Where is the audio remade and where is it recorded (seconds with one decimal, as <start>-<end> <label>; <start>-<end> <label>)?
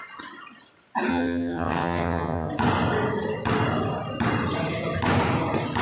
0.0-1.1 recorded; 1.1-2.5 remade; 2.5-5.8 recorded